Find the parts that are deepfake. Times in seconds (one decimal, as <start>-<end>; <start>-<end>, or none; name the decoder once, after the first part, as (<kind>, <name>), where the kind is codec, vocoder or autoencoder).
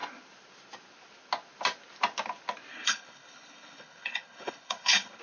2.7-5.2 (codec, HILCodec)